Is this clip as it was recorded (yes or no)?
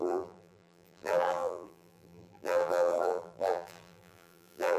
no